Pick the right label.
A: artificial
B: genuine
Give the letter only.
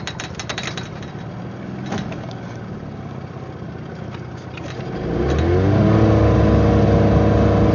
B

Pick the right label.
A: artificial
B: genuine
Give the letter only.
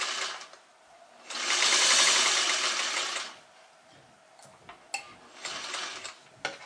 B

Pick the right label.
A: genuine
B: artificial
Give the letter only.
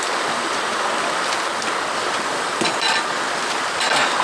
A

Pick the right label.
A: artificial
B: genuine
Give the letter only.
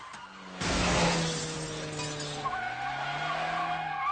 B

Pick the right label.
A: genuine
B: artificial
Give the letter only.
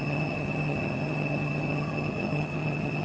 B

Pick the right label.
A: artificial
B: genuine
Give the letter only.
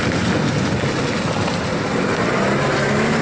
B